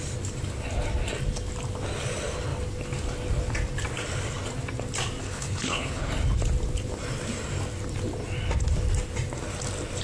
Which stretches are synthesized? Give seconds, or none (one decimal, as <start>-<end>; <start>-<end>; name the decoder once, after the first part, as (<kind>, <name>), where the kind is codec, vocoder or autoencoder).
5.2-6.1 (codec, HILCodec)